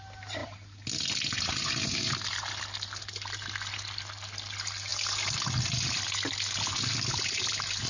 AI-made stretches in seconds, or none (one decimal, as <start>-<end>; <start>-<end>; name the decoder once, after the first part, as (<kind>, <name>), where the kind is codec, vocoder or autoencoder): none